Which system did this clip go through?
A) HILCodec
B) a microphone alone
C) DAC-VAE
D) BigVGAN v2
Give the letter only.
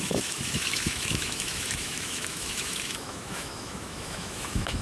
C